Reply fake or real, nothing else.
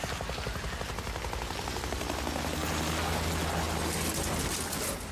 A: real